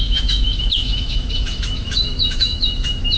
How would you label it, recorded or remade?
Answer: remade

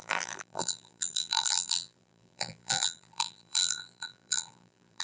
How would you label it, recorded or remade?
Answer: remade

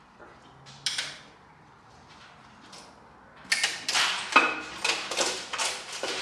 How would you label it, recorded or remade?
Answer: recorded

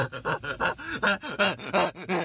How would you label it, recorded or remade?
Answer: recorded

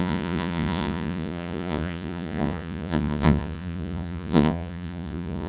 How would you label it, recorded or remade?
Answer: remade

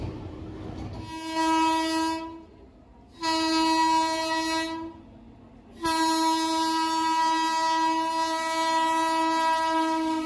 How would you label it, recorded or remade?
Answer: recorded